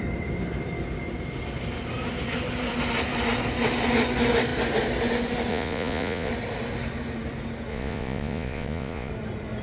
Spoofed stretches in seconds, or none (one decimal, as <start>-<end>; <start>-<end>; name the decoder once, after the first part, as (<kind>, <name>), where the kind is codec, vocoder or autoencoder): 5.5-6.3 (vocoder, Vocos); 7.7-9.1